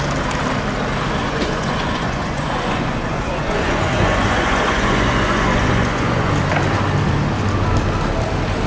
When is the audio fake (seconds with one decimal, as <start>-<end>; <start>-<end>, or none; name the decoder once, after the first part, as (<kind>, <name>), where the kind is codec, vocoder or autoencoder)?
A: 1.2-6.3 (vocoder, Vocos)